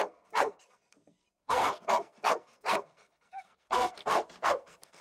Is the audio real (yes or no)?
no